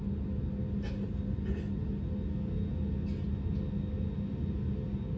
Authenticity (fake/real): real